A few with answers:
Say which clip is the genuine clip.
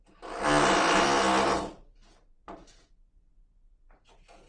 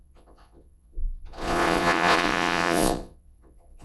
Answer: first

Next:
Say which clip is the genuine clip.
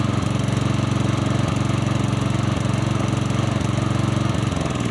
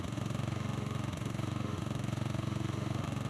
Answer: first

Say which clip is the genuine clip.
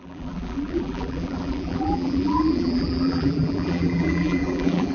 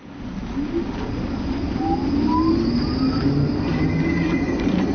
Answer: second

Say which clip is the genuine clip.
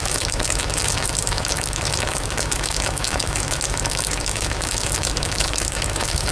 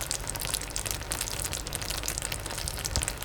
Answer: second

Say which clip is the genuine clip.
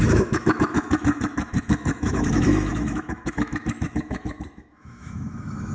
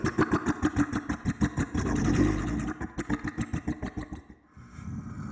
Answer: second